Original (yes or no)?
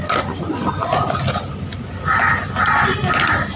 yes